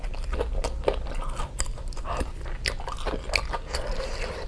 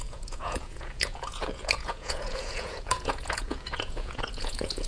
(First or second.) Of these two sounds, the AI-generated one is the second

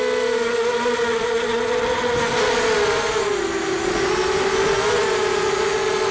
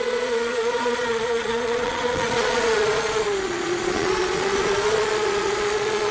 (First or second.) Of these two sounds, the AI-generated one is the second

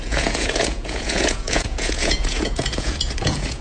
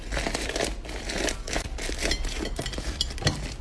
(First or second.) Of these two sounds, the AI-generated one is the first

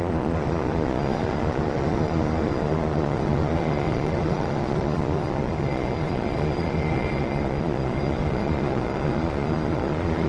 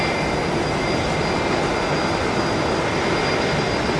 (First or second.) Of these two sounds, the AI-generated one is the first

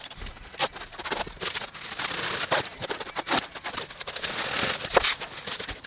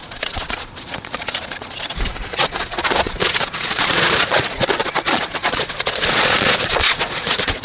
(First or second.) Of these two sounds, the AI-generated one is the second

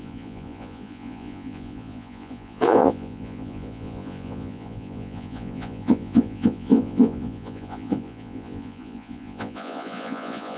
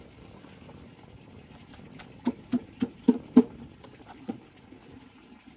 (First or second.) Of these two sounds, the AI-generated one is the first